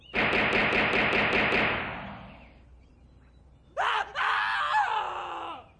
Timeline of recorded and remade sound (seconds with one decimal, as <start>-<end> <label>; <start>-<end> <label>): 0.0-5.8 recorded